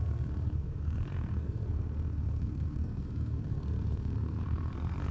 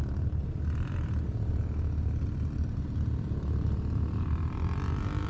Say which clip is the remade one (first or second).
first